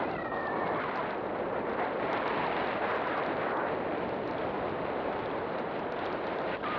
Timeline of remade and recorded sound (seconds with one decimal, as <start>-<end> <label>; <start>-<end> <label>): 0.0-6.8 recorded